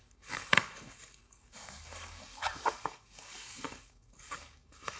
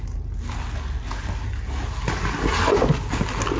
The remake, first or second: first